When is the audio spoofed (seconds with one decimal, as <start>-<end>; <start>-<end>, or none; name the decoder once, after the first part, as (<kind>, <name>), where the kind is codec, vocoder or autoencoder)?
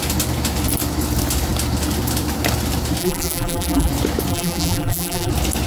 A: 3.0-3.9 (vocoder, BigVGAN v2); 4.3-5.3